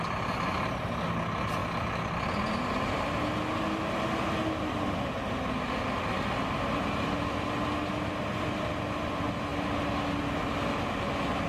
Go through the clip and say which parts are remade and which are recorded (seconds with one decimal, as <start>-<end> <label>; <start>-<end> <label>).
0.0-11.5 recorded